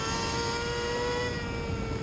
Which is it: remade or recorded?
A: recorded